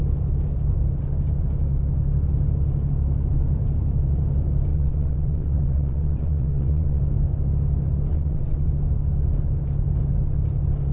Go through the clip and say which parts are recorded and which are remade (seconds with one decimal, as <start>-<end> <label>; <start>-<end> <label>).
0.0-4.7 recorded; 4.7-7.0 remade; 7.0-8.1 recorded; 8.1-8.7 remade; 8.7-10.9 recorded